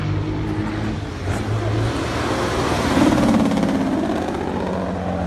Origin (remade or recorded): recorded